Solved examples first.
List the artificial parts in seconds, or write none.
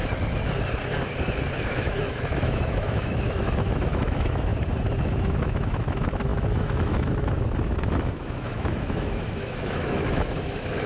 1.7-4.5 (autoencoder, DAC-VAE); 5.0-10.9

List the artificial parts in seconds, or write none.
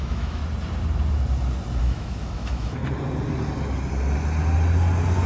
0.0-0.4 (autoencoder, DAC-VAE); 1.8-2.8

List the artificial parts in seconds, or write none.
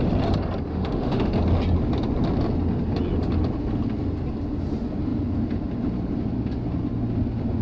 0.7-1.3 (autoencoder, DAC-VAE)